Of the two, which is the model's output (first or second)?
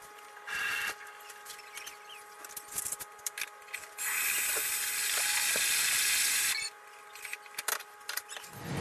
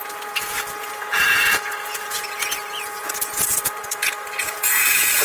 second